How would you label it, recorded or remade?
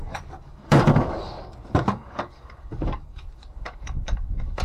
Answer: remade